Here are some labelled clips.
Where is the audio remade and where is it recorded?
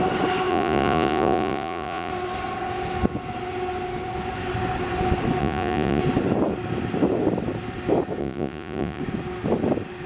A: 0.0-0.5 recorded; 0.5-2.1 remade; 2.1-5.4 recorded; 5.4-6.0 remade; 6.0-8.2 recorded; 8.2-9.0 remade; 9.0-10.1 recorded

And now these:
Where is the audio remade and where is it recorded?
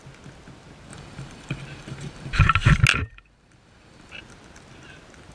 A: 0.0-0.9 recorded; 0.9-2.5 remade; 2.5-2.9 recorded; 2.9-4.1 remade; 4.1-5.3 recorded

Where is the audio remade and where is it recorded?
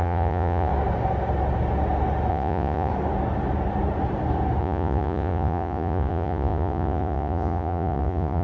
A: 0.0-0.7 remade; 0.7-2.3 recorded; 2.3-2.9 remade; 2.9-4.6 recorded; 4.6-8.4 remade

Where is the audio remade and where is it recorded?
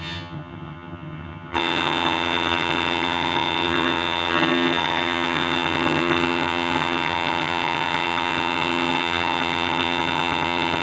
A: 0.0-10.8 remade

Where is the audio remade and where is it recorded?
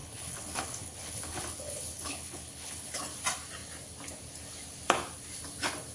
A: 0.0-3.0 remade; 3.0-5.9 recorded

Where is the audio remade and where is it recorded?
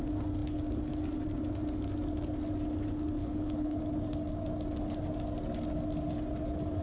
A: 0.0-3.2 recorded; 3.2-3.8 remade; 3.8-6.8 recorded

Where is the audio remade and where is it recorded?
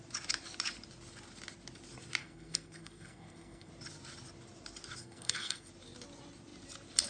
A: 0.0-2.2 recorded; 2.2-3.7 remade; 3.7-5.0 recorded; 5.0-5.7 remade; 5.7-7.1 recorded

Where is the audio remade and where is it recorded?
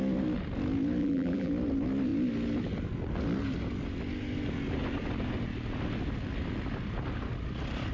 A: 0.0-1.0 recorded; 1.0-1.5 remade; 1.5-7.9 recorded